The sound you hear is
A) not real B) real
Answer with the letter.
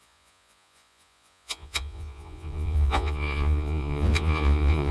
A